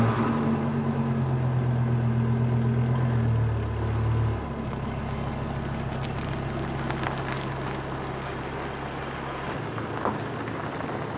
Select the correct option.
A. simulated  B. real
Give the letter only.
B